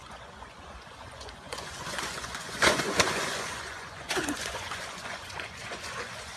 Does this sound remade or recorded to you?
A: remade